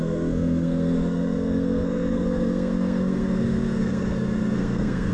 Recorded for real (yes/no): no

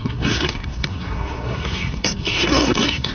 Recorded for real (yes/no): no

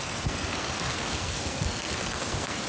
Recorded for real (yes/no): no